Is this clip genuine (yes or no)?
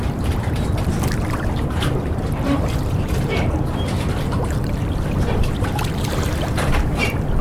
no